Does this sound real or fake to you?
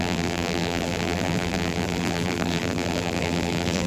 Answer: fake